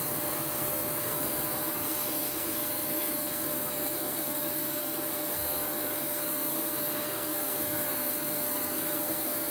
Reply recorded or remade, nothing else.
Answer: remade